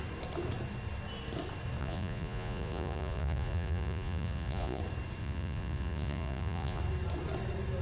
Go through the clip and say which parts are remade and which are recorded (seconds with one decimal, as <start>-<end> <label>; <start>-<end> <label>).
0.0-1.8 recorded; 1.8-4.8 remade; 4.8-5.2 recorded; 5.2-6.8 remade; 6.8-7.8 recorded